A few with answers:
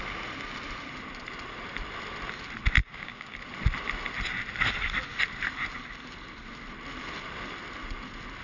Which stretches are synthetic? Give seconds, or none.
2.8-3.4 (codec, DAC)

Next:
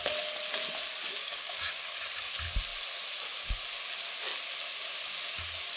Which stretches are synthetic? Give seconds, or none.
1.1-1.8 (codec, DAC)

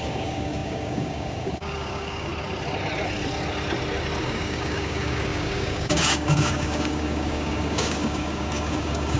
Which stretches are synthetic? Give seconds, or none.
0.0-2.3 (codec, DAC); 4.2-9.2

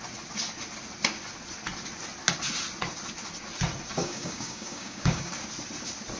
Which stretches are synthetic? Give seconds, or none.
4.0-5.3 (codec, DAC)

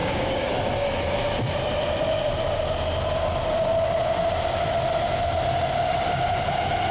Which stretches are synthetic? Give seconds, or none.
0.0-0.5 (codec, DAC)